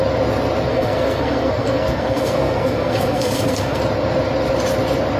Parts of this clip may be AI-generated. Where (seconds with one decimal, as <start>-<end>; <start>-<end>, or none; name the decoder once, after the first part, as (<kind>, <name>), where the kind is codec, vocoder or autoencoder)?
0.7-3.8 (codec, SNAC)